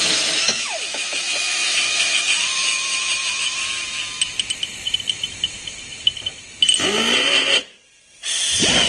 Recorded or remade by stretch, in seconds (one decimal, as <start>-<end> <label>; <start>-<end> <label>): 0.0-3.6 remade; 3.6-8.9 recorded